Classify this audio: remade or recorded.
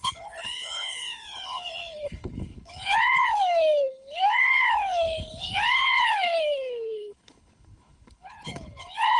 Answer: remade